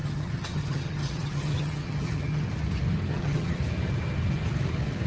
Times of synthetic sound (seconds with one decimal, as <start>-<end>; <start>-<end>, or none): 0.0-2.5; 3.1-3.6